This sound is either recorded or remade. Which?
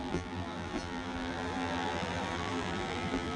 remade